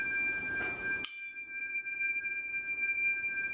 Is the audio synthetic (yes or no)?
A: yes